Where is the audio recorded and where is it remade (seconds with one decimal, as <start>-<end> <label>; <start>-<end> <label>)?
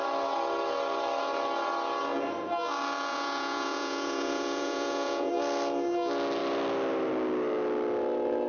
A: 0.0-3.1 recorded; 3.1-5.3 remade; 5.3-8.5 recorded